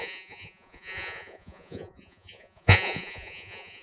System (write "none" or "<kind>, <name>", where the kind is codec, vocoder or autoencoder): vocoder, Vocos